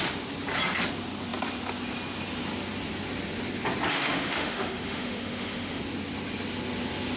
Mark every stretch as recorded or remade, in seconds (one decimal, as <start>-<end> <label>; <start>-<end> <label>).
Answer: 0.0-3.9 recorded; 3.9-5.8 remade; 5.8-7.2 recorded